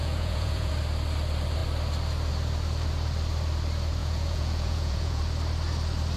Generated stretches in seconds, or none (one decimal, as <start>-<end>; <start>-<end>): 0.0-0.7; 4.0-5.2